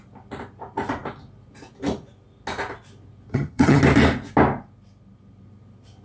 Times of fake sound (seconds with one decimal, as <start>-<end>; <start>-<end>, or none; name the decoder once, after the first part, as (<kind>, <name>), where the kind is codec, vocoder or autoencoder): 3.3-3.8 (vocoder, HiFi-GAN)